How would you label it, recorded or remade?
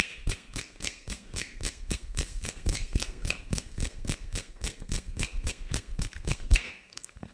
remade